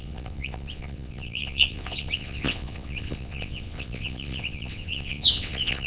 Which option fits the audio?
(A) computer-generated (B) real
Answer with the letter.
A